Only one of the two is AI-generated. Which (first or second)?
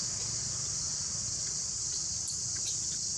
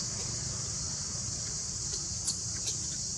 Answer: second